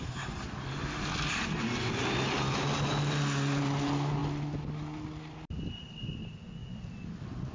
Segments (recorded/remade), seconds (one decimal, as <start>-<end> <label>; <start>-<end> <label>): 0.0-7.5 recorded